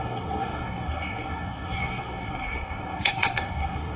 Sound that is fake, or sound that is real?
fake